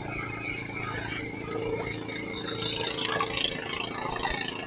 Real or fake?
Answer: real